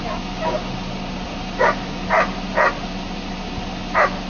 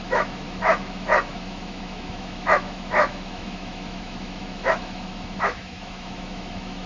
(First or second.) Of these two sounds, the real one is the first